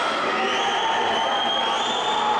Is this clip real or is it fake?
real